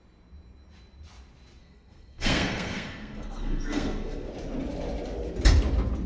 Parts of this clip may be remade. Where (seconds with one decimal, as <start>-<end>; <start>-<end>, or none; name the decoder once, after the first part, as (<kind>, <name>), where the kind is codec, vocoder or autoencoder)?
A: 1.6-4.3 (codec, SNAC)